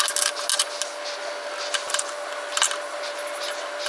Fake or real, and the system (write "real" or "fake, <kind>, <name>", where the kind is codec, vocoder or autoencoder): real